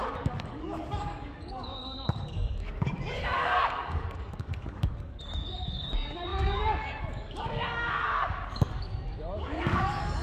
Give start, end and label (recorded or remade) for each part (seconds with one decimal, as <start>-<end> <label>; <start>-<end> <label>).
0.0-10.2 remade